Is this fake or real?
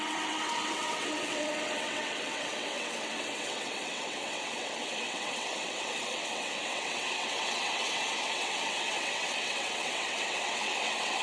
fake